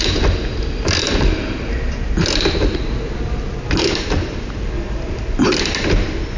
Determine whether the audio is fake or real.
real